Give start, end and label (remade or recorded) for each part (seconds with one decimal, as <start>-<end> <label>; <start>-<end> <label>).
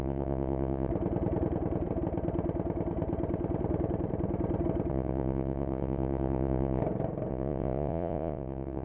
0.0-0.9 remade; 0.9-4.9 recorded; 4.9-6.8 remade; 6.8-7.3 recorded; 7.3-8.8 remade